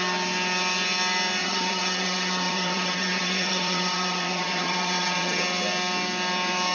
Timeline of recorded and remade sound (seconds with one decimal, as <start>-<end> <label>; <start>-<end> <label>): 0.0-1.4 recorded; 1.4-5.4 remade; 5.4-6.7 recorded

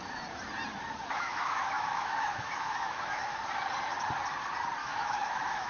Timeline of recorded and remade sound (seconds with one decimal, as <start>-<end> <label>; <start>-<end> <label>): 0.0-1.1 recorded; 1.1-3.4 remade; 3.4-4.8 recorded; 4.8-5.7 remade

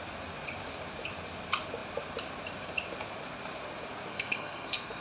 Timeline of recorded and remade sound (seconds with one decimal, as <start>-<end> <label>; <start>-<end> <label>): 0.0-4.1 recorded; 4.1-5.0 remade

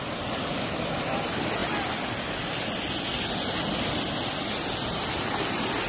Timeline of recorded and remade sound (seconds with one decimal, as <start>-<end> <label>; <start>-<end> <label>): 0.0-5.9 recorded